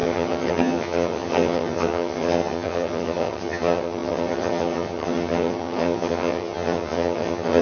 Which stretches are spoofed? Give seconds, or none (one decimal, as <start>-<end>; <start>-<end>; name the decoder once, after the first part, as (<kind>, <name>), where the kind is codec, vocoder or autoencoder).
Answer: 0.0-7.6 (vocoder, HiFi-GAN)